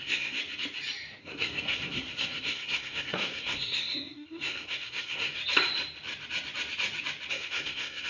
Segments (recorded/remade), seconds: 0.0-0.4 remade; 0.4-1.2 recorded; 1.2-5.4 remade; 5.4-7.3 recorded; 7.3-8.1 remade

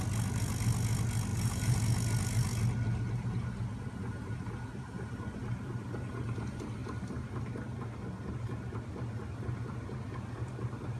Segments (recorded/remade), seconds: 0.0-1.3 recorded; 1.3-1.8 remade; 1.8-11.0 recorded

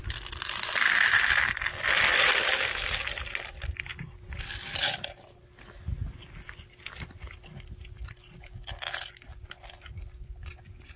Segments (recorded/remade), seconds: 0.0-11.0 recorded

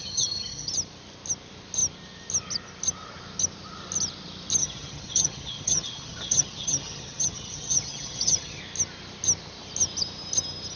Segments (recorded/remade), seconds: 0.0-0.7 remade; 0.7-4.6 recorded; 4.6-8.6 remade; 8.6-10.8 recorded

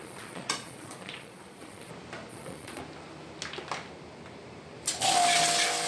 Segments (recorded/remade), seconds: 0.0-1.9 remade; 1.9-2.3 recorded; 2.3-2.8 remade; 2.8-5.9 recorded

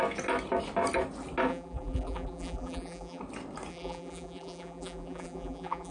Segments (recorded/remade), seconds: 0.0-1.5 recorded; 1.5-3.2 remade; 3.2-3.7 recorded; 3.7-5.9 remade